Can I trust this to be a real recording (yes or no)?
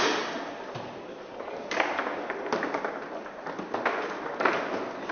yes